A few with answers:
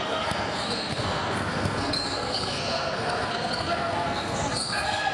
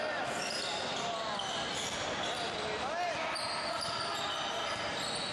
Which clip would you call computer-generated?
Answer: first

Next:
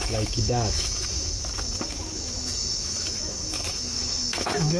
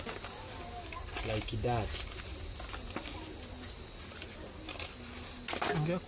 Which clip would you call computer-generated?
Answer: first